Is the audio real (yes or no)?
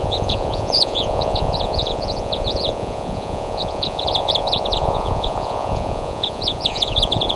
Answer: no